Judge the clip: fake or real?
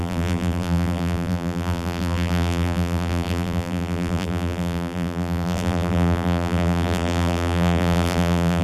fake